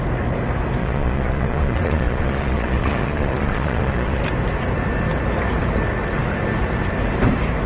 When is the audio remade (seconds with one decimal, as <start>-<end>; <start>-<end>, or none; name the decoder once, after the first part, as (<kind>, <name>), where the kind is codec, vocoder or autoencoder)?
0.8-4.2 (vocoder, Vocos)